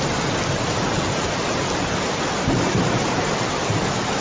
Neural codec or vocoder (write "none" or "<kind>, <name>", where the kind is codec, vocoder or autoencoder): none